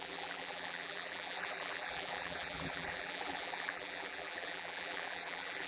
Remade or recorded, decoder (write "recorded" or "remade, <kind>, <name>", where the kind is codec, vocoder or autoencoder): remade, vocoder, BigVGAN v2